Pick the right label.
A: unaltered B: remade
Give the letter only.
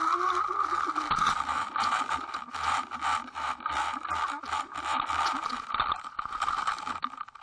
A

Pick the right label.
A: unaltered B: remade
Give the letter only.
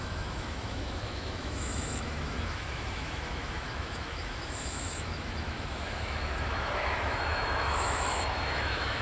B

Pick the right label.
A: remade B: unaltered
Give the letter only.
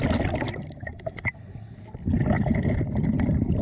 B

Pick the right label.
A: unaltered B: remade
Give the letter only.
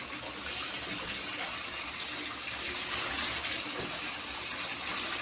A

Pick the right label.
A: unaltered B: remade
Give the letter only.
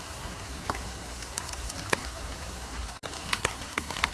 B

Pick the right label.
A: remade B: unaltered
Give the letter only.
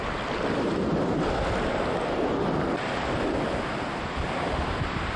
B